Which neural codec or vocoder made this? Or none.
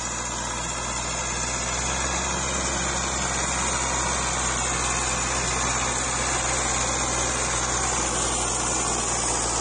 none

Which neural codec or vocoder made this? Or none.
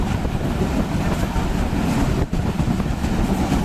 none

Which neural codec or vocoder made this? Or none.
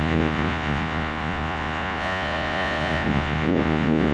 vocoder, Vocos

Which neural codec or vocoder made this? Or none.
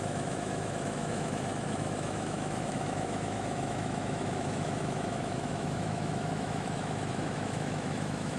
autoencoder, DAC-VAE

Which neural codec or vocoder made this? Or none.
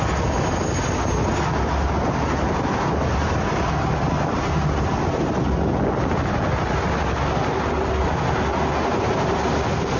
none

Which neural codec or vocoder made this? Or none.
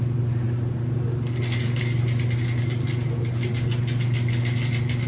none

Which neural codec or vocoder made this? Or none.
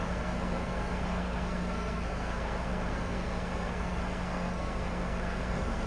codec, SNAC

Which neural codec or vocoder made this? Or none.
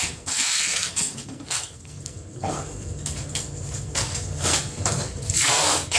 codec, SNAC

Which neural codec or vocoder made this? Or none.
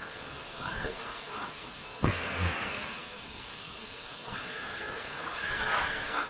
codec, SNAC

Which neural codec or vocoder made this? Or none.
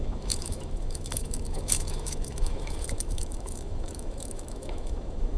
autoencoder, DAC-VAE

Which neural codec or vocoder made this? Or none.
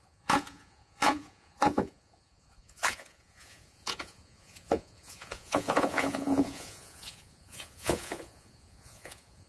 vocoder, Vocos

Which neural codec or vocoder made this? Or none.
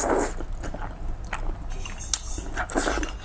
none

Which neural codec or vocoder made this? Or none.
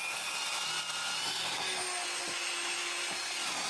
none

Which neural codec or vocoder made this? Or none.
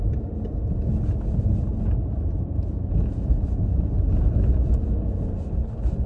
none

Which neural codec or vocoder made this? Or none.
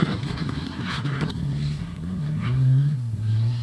codec, SNAC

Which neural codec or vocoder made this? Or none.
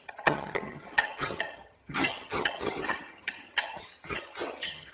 vocoder, HiFi-GAN